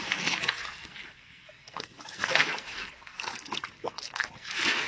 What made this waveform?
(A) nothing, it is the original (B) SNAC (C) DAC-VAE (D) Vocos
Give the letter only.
B